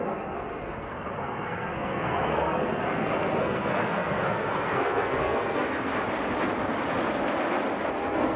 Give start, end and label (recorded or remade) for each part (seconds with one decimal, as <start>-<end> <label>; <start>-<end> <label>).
0.0-5.9 remade; 5.9-7.9 recorded; 7.9-8.4 remade